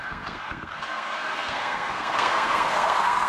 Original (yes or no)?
no